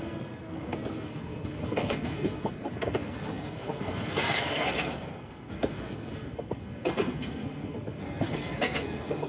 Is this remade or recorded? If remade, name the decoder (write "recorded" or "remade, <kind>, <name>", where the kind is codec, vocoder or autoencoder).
remade, codec, SNAC